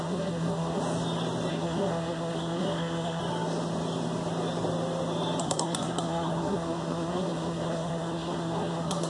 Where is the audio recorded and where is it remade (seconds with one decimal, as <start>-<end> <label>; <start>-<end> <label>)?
0.0-0.8 remade; 0.8-1.5 recorded; 1.5-3.2 remade; 3.2-5.4 recorded; 5.4-9.1 remade